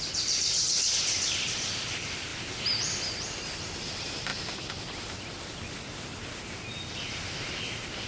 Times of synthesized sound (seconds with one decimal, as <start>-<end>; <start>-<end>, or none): none